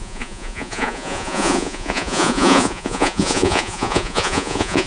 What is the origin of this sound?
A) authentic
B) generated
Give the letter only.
B